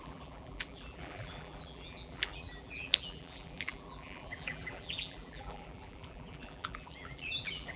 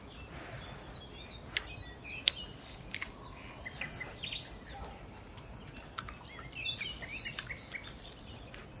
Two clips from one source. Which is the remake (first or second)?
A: first